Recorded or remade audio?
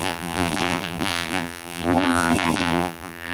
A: remade